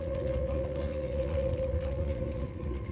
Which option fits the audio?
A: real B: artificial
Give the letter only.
B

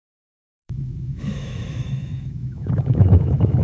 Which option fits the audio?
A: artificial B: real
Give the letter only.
A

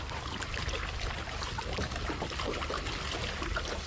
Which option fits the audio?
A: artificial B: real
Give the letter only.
B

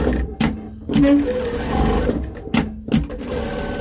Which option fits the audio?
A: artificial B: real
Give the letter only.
B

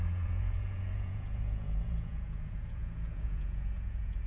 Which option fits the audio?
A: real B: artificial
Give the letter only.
B